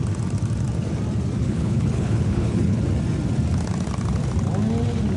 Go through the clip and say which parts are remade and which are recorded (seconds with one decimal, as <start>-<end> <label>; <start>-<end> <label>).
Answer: 0.0-1.4 recorded; 1.4-2.8 remade; 2.8-5.2 recorded